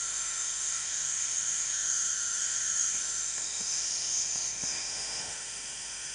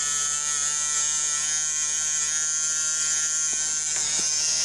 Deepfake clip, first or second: first